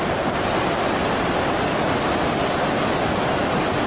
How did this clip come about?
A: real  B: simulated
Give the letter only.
A